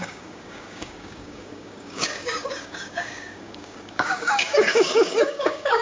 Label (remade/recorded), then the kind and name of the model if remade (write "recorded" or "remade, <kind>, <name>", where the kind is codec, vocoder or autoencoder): remade, codec, DAC